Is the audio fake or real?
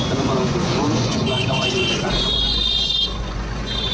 fake